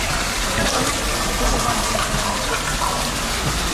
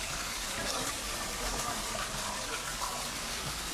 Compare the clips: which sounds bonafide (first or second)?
first